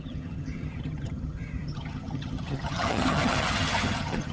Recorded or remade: remade